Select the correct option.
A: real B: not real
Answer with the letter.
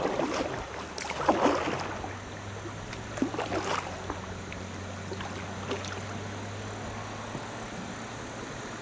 A